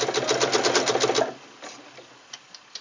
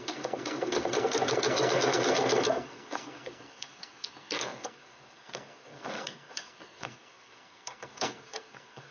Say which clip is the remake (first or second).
second